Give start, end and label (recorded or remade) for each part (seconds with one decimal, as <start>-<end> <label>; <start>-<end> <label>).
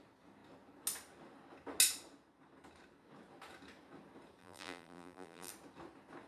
0.0-4.4 recorded; 4.4-5.5 remade; 5.5-6.3 recorded